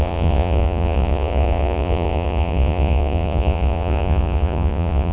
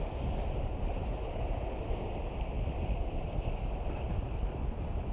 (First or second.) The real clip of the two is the second